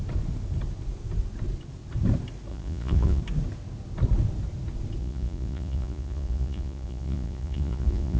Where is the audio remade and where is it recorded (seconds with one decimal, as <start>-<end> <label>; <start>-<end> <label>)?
0.0-2.5 recorded; 2.5-3.2 remade; 3.2-5.0 recorded; 5.0-8.2 remade

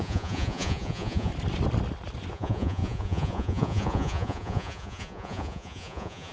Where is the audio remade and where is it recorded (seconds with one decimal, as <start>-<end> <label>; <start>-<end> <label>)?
0.0-1.3 remade; 1.3-2.3 recorded; 2.3-6.3 remade

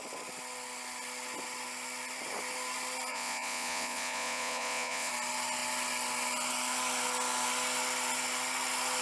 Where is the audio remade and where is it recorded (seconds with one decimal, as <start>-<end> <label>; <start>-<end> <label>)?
0.0-3.1 recorded; 3.1-5.1 remade; 5.1-9.0 recorded

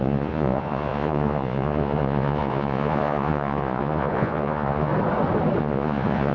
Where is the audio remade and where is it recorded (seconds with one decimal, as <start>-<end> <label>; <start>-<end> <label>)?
0.0-4.9 remade; 4.9-5.6 recorded; 5.6-6.3 remade

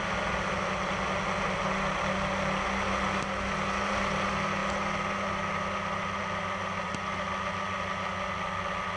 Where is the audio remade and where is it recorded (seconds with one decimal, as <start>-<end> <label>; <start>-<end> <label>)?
0.0-9.0 recorded

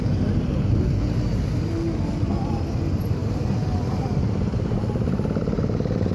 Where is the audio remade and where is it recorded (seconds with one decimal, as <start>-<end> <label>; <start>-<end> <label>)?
0.0-6.1 recorded

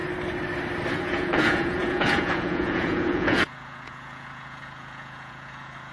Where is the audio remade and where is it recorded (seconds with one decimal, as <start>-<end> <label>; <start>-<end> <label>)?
0.0-0.9 recorded; 0.9-5.9 remade

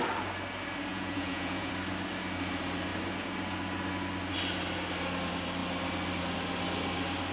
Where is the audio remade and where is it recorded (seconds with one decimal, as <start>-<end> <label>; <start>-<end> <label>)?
0.0-0.9 recorded; 0.9-1.7 remade; 1.7-7.3 recorded